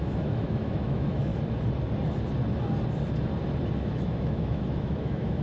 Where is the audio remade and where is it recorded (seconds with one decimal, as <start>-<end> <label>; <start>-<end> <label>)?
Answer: 0.0-1.3 remade; 1.3-3.8 recorded; 3.8-5.4 remade